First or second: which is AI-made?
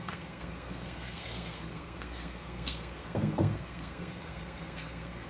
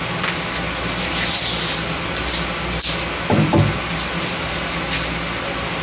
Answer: first